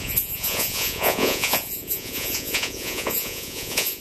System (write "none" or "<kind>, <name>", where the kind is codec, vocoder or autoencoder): vocoder, Vocos